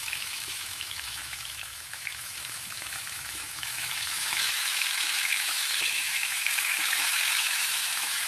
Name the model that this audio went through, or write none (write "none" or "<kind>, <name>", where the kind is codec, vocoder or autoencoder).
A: autoencoder, DAC-VAE